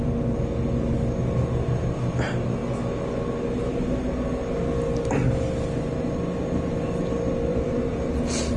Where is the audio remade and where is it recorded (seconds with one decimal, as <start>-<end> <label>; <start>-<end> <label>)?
0.0-7.5 recorded; 7.5-8.1 remade; 8.1-8.6 recorded